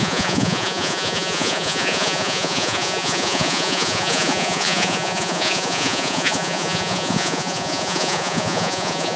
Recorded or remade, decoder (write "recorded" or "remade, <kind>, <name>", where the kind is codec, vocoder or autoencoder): remade, vocoder, Vocos